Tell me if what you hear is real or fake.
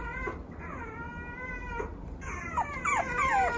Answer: real